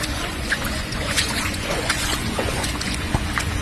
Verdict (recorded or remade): remade